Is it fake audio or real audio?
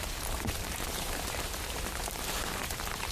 fake